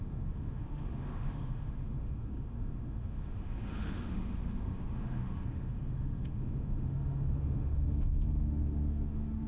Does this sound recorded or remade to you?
remade